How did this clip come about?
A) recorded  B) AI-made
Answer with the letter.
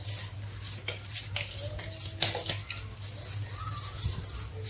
A